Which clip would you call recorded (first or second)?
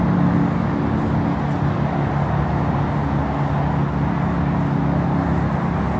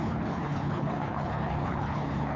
first